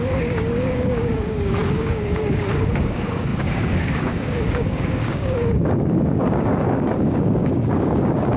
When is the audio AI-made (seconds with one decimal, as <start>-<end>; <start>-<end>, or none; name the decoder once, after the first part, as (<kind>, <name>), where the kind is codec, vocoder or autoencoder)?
0.0-8.4 (codec, DAC)

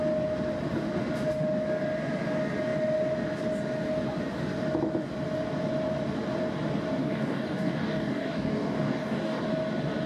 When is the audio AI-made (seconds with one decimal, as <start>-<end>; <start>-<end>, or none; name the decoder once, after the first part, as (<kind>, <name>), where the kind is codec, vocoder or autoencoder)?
7.0-9.4 (codec, DAC)

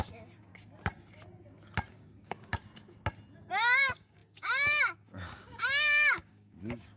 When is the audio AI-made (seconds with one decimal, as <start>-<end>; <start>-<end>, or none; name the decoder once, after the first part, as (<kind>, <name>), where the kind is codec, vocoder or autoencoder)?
0.0-0.5 (codec, DAC); 1.9-2.5; 3.5-7.0

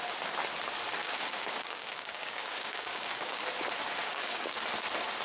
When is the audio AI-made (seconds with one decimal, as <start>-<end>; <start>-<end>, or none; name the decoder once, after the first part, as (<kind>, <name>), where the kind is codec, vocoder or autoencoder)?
1.0-3.4 (codec, DAC); 4.0-4.6

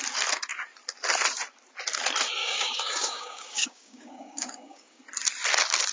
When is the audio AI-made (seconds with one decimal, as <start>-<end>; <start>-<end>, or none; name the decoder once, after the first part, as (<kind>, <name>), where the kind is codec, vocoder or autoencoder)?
2.4-5.0 (codec, DAC)

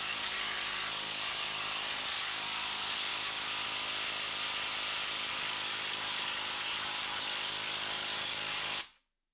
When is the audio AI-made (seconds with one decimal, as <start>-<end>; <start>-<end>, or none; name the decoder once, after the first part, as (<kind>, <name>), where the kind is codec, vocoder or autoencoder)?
0.0-3.1 (codec, DAC); 5.3-9.3